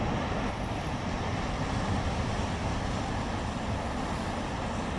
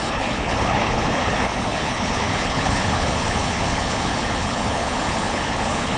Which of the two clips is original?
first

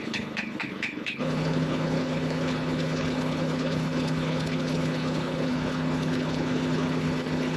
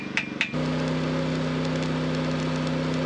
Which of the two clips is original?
second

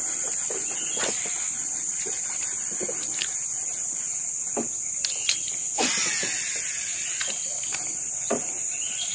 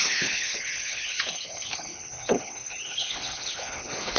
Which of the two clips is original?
first